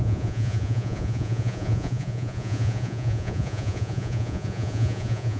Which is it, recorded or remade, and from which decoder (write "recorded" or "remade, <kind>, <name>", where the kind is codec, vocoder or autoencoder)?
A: remade, vocoder, Vocos